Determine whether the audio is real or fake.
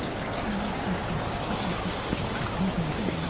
fake